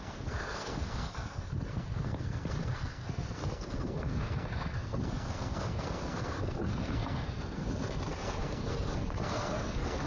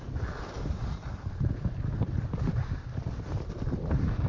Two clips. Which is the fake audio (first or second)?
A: first